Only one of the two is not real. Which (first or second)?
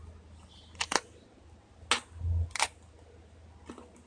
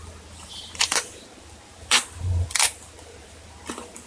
second